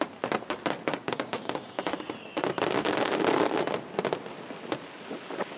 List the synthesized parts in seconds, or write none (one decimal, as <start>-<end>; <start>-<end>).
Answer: 0.9-1.8